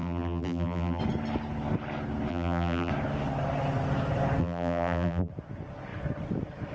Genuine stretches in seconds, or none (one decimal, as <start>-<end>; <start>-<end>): 1.0-2.3; 2.9-4.4; 5.3-6.7